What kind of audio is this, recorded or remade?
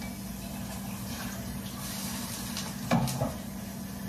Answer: recorded